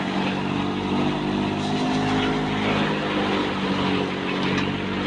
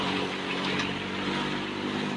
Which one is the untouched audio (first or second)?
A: first